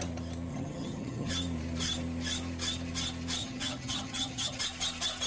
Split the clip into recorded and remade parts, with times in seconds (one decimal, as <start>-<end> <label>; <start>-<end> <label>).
0.0-0.5 recorded; 0.5-1.3 remade; 1.3-3.4 recorded; 3.4-4.6 remade; 4.6-5.3 recorded